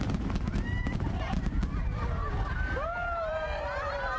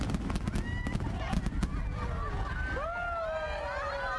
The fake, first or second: first